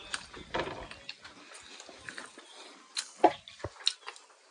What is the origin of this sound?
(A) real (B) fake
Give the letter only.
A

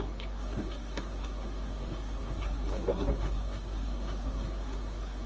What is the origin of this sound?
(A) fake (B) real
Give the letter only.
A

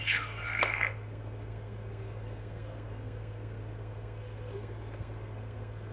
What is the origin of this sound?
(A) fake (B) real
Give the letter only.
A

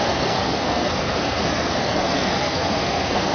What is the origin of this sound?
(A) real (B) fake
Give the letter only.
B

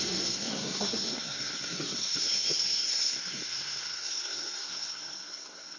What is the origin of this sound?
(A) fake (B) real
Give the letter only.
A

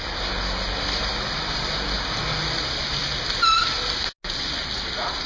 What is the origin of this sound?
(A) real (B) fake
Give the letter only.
A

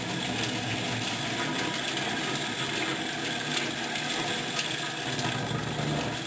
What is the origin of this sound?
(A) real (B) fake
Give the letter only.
A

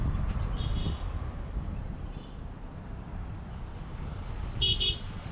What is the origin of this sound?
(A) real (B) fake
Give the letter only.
A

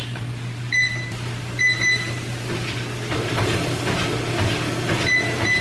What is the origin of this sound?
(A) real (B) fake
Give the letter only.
A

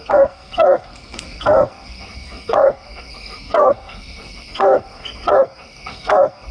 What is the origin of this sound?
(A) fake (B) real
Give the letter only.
A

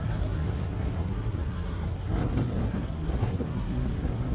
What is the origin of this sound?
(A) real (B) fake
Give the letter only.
B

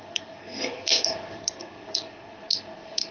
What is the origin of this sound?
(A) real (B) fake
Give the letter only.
B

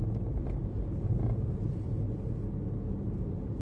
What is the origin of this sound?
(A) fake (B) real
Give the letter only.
B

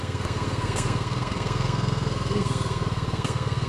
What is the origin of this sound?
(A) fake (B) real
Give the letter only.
A